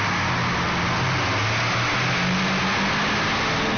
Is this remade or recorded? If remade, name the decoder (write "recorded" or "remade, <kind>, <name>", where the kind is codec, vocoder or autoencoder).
recorded